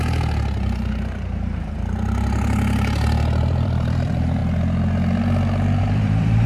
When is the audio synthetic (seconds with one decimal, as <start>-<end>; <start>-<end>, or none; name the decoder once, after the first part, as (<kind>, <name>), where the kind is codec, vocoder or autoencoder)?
0.0-4.4 (vocoder, BigVGAN v2); 5.8-6.5